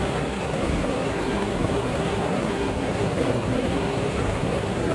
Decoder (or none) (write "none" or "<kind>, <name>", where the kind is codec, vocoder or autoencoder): codec, SNAC